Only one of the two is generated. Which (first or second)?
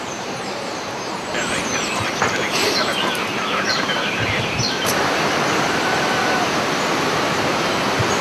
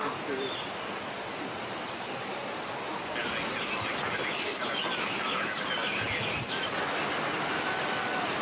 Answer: first